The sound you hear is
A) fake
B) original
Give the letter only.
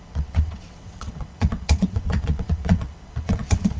A